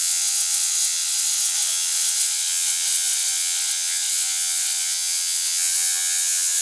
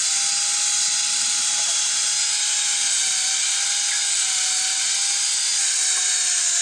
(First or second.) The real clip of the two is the second